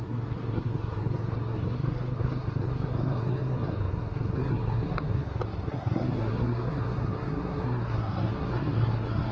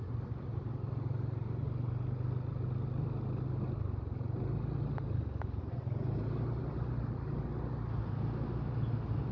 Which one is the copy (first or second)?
first